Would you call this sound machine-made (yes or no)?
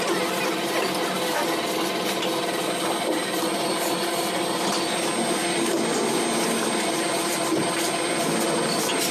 no